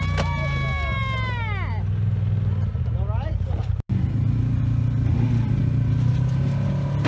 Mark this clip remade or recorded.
recorded